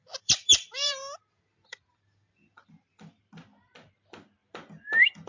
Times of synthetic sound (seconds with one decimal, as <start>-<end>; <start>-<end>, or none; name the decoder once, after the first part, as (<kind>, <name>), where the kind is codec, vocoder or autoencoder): 0.0-3.2 (vocoder, BigVGAN v2); 4.4-5.3